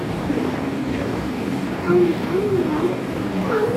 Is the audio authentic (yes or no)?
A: no